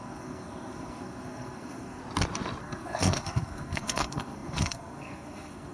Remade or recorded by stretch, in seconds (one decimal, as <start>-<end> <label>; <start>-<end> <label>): 0.0-2.0 remade; 2.0-2.6 recorded; 2.6-5.7 remade